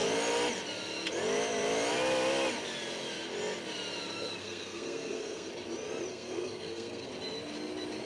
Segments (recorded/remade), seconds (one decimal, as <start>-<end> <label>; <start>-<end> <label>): 0.0-4.4 recorded; 4.4-5.5 remade; 5.5-6.1 recorded; 6.1-7.1 remade; 7.1-8.1 recorded